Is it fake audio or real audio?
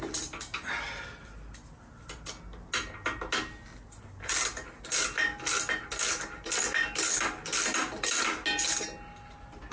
real